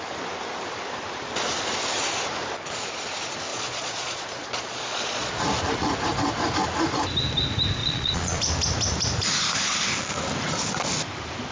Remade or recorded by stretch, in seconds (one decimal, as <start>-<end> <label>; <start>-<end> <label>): 0.0-3.5 recorded; 3.5-5.3 remade; 5.3-7.8 recorded; 7.8-8.4 remade; 8.4-11.5 recorded